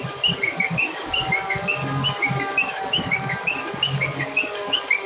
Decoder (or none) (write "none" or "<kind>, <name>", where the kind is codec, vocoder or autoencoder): codec, DAC